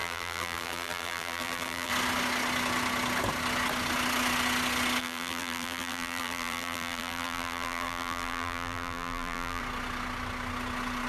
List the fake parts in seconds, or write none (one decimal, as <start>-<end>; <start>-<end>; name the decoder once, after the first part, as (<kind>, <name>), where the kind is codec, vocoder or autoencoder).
0.0-1.9 (vocoder, BigVGAN v2); 5.0-9.6